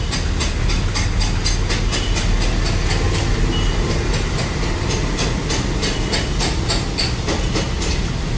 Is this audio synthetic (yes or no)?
no